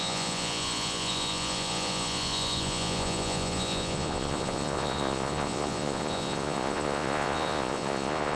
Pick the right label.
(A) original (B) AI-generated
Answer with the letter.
B